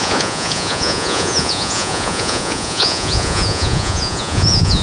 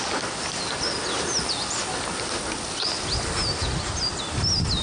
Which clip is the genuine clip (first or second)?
second